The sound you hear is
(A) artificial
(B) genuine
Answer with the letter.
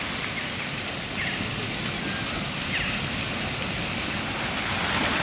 B